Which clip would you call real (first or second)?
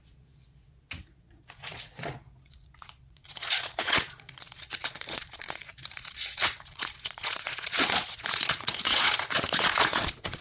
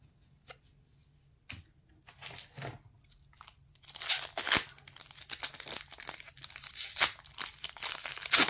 second